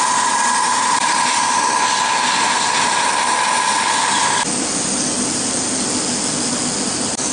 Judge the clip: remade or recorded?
recorded